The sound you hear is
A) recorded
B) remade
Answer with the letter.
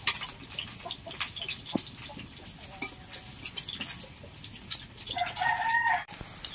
A